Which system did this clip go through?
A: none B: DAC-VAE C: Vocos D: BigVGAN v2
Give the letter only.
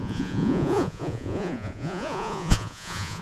C